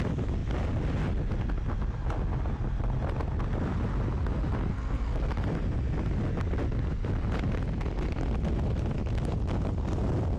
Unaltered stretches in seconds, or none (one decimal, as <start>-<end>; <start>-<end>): 0.0-4.7; 5.3-10.4